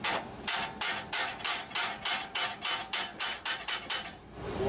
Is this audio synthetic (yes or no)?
yes